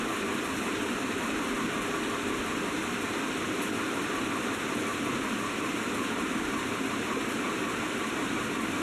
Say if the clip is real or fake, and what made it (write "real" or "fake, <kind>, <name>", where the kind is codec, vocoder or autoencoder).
fake, vocoder, BigVGAN v2